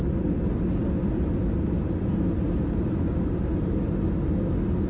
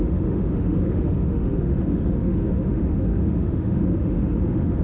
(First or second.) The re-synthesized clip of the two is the second